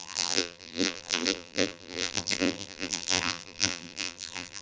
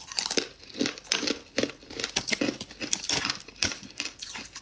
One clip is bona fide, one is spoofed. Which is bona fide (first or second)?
second